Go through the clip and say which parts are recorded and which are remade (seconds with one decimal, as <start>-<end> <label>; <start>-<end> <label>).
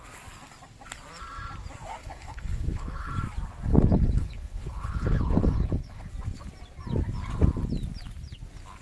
0.0-2.0 recorded; 2.0-3.1 remade; 3.1-3.7 recorded; 3.7-6.1 remade; 6.1-8.8 recorded